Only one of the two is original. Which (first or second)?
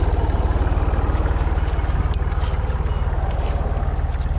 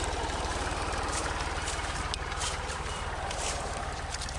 first